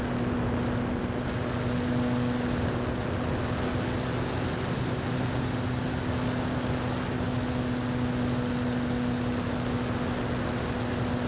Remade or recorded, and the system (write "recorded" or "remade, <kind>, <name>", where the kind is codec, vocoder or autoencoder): recorded